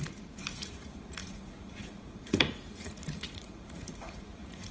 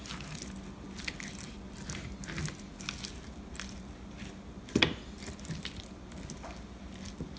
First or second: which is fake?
first